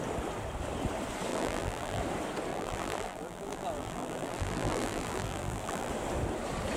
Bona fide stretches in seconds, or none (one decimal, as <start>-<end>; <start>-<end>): 0.0-1.3; 2.0-2.5; 5.9-6.8